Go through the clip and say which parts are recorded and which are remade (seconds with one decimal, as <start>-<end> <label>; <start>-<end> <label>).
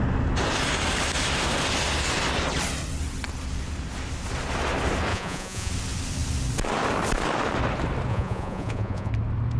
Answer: 0.0-5.1 recorded; 5.1-5.7 remade; 5.7-8.1 recorded; 8.1-9.1 remade; 9.1-9.6 recorded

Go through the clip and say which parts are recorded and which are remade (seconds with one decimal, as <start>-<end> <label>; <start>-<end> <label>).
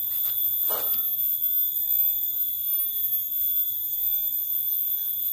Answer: 0.0-0.7 remade; 0.7-4.4 recorded; 4.4-5.3 remade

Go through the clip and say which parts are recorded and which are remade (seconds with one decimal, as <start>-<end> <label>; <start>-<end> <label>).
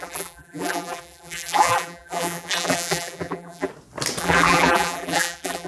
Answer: 0.0-3.7 remade; 3.7-4.2 recorded; 4.2-5.7 remade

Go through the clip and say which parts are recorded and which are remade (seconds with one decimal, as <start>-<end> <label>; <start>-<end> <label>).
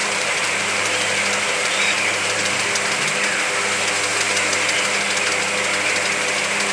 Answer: 0.0-2.5 remade; 2.5-6.7 recorded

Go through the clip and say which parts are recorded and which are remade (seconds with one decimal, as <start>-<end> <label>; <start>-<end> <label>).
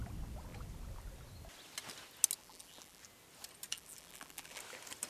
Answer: 0.0-2.4 recorded; 2.4-3.0 remade; 3.0-3.7 recorded; 3.7-4.6 remade; 4.6-5.1 recorded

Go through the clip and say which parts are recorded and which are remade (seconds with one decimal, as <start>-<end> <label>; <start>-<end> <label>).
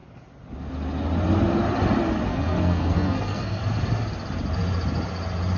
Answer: 0.0-2.3 recorded; 2.3-3.6 remade; 3.6-5.6 recorded